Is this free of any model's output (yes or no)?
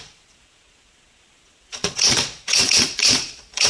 no